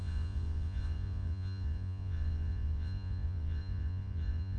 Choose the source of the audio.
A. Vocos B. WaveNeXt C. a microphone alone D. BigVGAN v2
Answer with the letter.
A